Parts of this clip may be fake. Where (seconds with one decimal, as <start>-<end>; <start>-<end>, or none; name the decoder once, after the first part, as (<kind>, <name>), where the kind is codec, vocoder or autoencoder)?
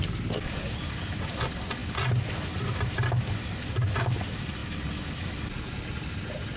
none